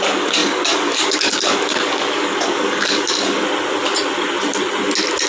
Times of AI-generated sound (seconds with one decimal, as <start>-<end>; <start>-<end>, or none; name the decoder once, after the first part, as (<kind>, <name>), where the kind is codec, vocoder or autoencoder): 0.0-3.4 (codec, DAC)